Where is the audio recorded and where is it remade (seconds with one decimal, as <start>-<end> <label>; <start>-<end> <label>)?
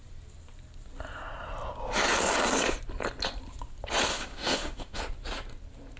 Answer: 0.0-4.1 recorded; 4.1-5.0 remade; 5.0-6.0 recorded